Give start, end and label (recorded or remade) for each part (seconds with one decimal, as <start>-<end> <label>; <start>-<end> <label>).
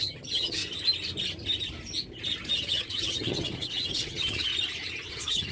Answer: 0.0-0.6 remade; 0.6-2.5 recorded; 2.5-4.5 remade; 4.5-5.1 recorded; 5.1-5.5 remade